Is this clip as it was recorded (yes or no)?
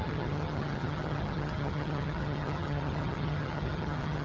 no